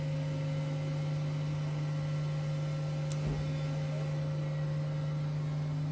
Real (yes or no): yes